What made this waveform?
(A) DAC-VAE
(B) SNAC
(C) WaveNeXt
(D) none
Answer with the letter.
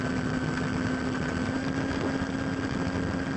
D